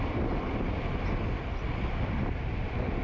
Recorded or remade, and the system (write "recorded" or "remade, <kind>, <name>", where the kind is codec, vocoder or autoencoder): recorded